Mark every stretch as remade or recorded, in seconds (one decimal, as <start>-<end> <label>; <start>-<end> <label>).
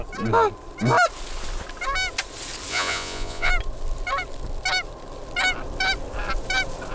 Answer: 0.0-2.7 recorded; 2.7-3.5 remade; 3.5-6.9 recorded